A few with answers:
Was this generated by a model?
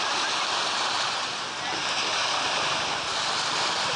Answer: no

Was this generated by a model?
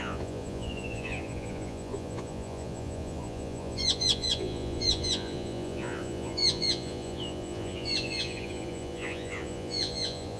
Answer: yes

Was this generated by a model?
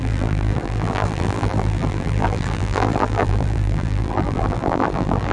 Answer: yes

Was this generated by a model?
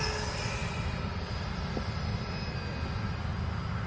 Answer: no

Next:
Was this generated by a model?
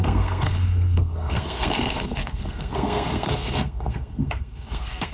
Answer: yes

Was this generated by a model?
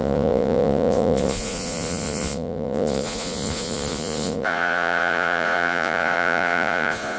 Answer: yes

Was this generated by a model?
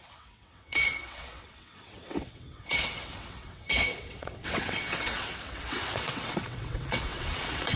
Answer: yes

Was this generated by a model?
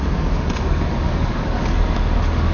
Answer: yes